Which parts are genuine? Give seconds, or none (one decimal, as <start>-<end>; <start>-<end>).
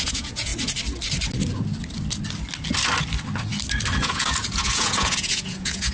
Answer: 0.5-4.0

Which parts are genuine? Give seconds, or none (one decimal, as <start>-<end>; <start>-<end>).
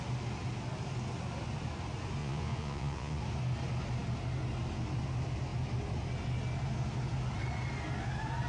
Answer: 0.0-2.2; 3.2-8.5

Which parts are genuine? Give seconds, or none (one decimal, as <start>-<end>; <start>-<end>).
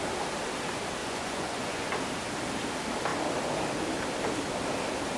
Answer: 0.0-1.0; 1.9-5.2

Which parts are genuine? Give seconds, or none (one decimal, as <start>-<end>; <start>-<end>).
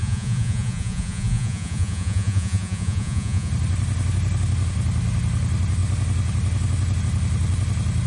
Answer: 3.5-8.1